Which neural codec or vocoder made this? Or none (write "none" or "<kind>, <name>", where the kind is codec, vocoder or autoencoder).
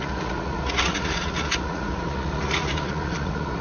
vocoder, Vocos